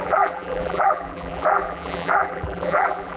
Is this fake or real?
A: fake